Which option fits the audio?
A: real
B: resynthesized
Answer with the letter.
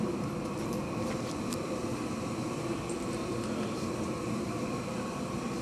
B